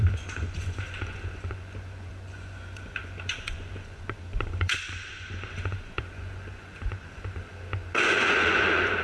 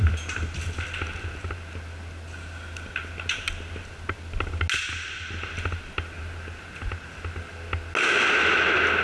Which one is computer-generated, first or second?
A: first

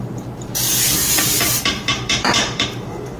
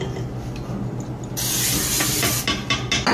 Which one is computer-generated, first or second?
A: first